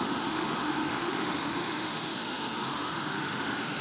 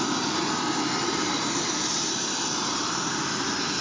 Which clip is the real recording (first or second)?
second